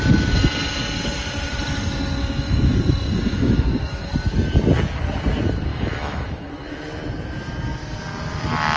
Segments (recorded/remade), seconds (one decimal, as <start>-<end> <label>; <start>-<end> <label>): 0.0-2.2 recorded; 2.2-2.8 remade; 2.8-3.3 recorded; 3.3-4.1 remade; 4.1-5.7 recorded; 5.7-6.8 remade; 6.8-8.8 recorded